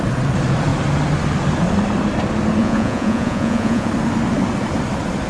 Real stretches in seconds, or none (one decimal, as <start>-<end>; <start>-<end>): 0.0-2.6; 3.9-5.3